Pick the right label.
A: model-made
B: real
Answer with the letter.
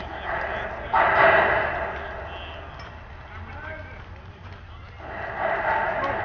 B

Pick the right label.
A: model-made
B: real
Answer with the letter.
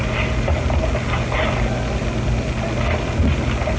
B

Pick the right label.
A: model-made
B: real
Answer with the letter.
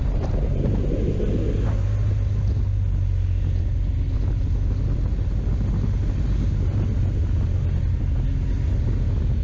B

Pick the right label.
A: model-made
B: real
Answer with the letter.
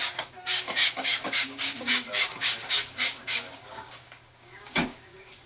A